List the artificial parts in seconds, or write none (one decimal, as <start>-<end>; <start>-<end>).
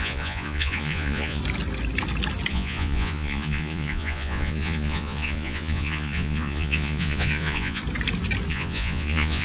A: 0.0-1.4; 2.5-7.8; 8.5-9.4